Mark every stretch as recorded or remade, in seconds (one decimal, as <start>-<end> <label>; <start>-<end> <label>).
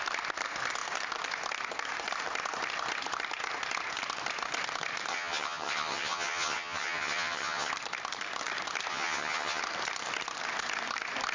0.0-5.1 recorded; 5.1-7.7 remade; 7.7-8.9 recorded; 8.9-9.6 remade; 9.6-11.3 recorded